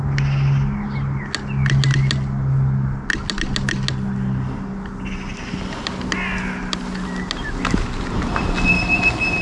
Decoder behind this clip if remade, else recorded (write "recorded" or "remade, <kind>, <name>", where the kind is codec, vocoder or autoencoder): recorded